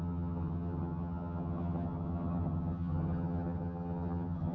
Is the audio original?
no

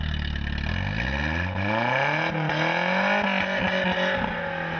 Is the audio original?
yes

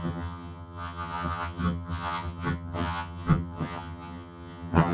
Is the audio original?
no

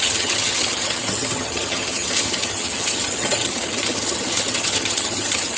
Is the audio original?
no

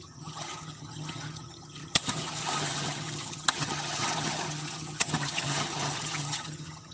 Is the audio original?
no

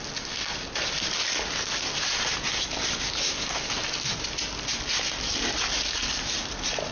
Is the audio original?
yes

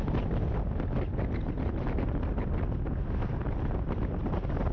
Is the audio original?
yes